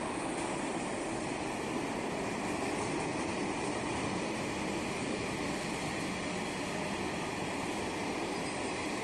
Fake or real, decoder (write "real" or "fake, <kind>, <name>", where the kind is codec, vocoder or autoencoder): real